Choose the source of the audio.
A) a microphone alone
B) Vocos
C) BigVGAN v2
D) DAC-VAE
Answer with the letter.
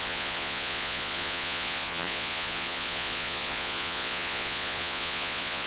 B